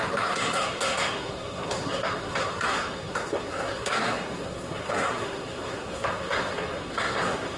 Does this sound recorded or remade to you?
remade